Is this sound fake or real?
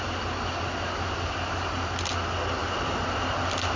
real